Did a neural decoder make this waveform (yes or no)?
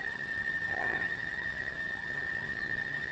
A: yes